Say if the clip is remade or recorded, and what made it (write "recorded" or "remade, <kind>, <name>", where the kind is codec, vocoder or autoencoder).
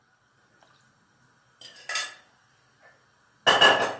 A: recorded